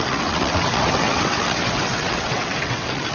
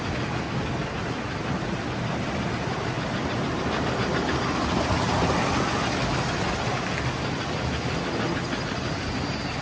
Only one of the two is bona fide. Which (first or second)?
second